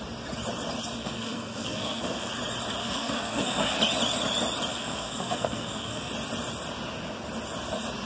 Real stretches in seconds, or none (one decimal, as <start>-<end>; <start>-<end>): 0.0-1.0; 2.3-2.8; 3.8-4.7; 6.1-8.0